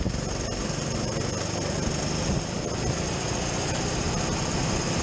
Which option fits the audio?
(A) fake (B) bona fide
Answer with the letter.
B